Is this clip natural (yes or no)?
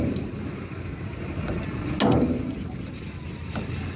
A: yes